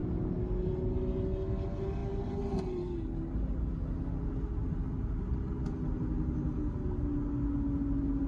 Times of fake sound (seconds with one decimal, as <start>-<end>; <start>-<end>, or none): none

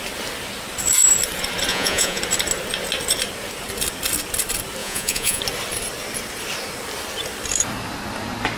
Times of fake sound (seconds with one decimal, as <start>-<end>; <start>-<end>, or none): 1.7-2.2; 4.8-5.4